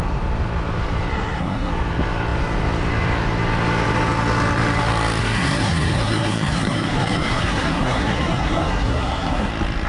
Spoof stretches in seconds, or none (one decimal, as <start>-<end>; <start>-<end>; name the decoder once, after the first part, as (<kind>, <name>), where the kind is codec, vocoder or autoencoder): 1.1-1.7 (codec, SNAC); 5.2-9.5